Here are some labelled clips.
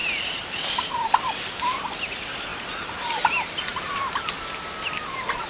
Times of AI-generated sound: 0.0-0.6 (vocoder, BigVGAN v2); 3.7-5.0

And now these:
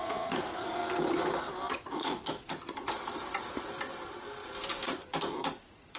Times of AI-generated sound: 0.0-0.8 (vocoder, Vocos); 1.7-2.2; 5.6-6.0

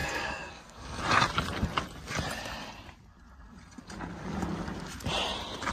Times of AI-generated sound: 0.0-1.0 (codec, SNAC)

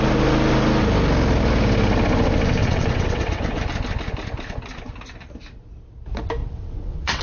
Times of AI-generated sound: 2.6-3.6 (vocoder, WaveNeXt); 6.4-7.2

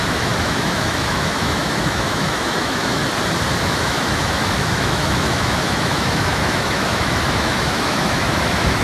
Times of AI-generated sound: 0.0-3.0 (autoencoder, DAC-VAE); 3.6-8.8

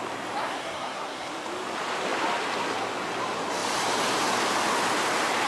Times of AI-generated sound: 0.4-1.3 (codec, SNAC)

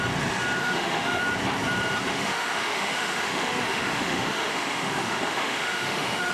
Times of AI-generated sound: 0.6-1.2 (autoencoder, DAC-VAE); 2.1-6.3

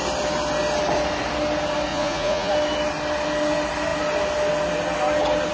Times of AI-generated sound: 1.9-2.5 (vocoder, Vocos)